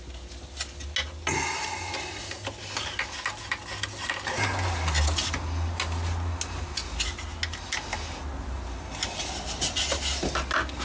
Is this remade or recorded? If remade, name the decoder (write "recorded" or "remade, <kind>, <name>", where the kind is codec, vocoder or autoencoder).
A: recorded